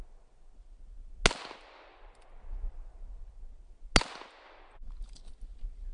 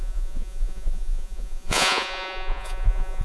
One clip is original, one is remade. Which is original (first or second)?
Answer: first